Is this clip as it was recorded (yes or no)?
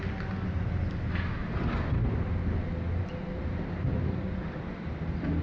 yes